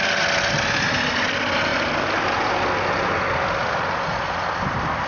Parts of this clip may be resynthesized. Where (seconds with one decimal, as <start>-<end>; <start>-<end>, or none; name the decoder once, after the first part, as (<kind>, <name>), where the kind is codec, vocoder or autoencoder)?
none

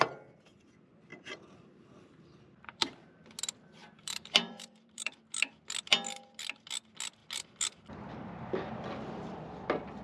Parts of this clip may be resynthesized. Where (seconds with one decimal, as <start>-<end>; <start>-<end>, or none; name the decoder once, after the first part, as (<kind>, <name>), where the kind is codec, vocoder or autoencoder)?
1.1-3.2 (vocoder, BigVGAN v2); 3.8-5.1

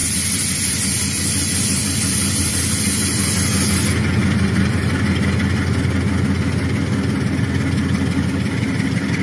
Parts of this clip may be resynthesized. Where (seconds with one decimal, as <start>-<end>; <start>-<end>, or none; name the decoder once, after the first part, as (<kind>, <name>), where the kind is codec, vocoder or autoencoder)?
0.0-2.8 (vocoder, BigVGAN v2); 4.2-5.0

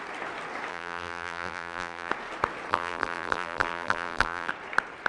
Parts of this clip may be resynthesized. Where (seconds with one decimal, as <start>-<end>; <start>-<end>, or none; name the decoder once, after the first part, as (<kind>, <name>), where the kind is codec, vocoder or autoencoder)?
0.7-2.1 (vocoder, BigVGAN v2); 2.7-4.5

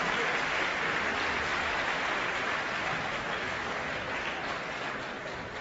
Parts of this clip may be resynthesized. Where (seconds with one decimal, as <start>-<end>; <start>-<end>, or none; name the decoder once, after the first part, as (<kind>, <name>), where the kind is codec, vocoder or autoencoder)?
0.7-2.6 (vocoder, BigVGAN v2)

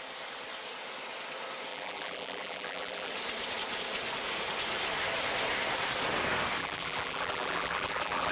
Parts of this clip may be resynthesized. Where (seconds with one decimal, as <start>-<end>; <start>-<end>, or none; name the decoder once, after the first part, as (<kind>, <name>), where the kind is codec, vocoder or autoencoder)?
1.7-3.1 (vocoder, BigVGAN v2); 6.6-8.3

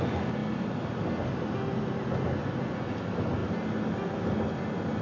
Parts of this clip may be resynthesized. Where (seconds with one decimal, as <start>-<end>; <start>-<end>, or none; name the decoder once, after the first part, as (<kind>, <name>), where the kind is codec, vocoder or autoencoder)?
0.4-1.0 (vocoder, BigVGAN v2)

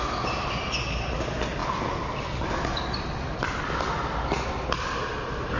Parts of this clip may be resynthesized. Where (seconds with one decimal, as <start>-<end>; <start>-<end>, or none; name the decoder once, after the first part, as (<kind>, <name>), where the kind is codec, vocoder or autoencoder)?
none